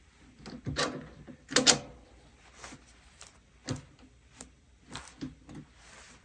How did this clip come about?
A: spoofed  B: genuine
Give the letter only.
B